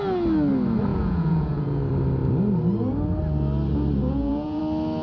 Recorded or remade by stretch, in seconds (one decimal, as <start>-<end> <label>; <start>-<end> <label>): 0.0-0.9 recorded; 0.9-1.8 remade; 1.8-4.0 recorded; 4.0-4.6 remade; 4.6-5.0 recorded